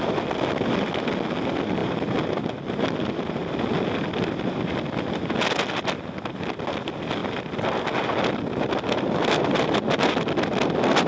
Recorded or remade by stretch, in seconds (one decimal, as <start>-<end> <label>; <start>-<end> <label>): 0.0-11.1 recorded